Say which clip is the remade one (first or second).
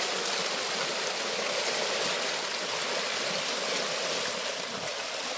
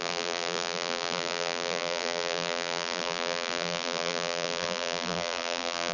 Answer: second